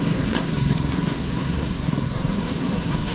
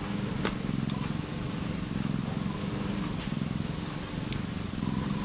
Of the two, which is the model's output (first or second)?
first